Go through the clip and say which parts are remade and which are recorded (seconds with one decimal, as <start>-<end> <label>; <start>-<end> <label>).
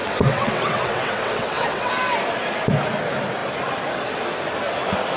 0.0-1.9 remade; 1.9-5.2 recorded